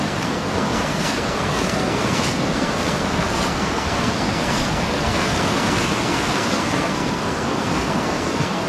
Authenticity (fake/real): fake